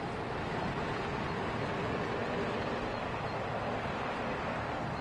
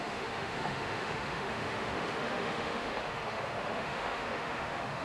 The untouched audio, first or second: first